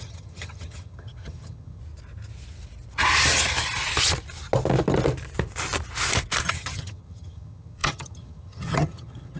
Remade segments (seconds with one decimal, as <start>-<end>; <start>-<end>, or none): 0.0-1.8; 6.4-9.4